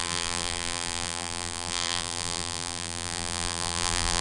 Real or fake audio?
fake